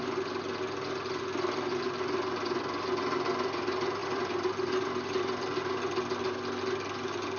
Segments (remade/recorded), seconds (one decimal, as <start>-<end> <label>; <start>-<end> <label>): 0.0-7.4 recorded